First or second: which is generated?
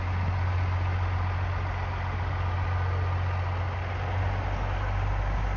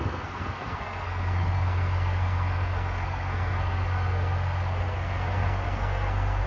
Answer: second